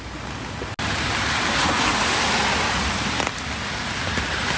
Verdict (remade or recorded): recorded